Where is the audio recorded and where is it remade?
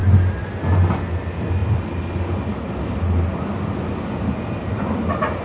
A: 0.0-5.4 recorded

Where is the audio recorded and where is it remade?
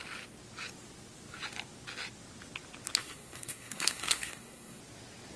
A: 0.0-3.0 recorded; 3.0-4.8 remade; 4.8-5.4 recorded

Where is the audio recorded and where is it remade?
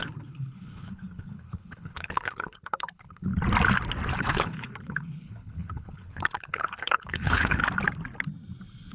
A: 0.0-3.3 remade; 3.3-4.2 recorded; 4.2-7.6 remade; 7.6-8.9 recorded